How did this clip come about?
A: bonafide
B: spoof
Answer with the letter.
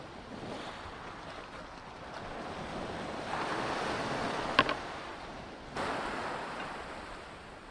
A